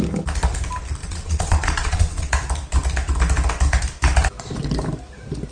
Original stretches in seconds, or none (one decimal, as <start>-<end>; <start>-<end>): 0.0-1.0; 2.3-5.5